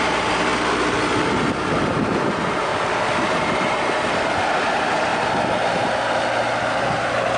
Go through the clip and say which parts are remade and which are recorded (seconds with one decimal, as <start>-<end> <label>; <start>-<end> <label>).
0.0-0.5 remade; 0.5-1.7 recorded; 1.7-2.7 remade; 2.7-3.3 recorded; 3.3-5.1 remade; 5.1-6.6 recorded; 6.6-7.4 remade